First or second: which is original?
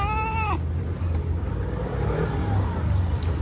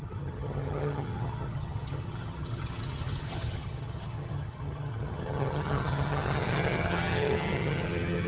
first